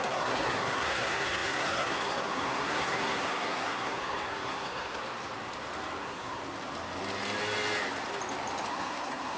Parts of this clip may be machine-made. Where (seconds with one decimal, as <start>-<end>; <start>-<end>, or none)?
0.0-5.0; 6.0-6.4; 8.7-9.4